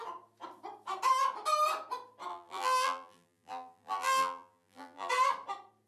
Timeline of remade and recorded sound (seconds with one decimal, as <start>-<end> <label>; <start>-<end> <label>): 0.0-2.3 recorded; 2.3-5.1 remade; 5.1-5.9 recorded